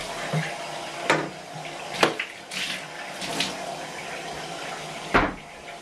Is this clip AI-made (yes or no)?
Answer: no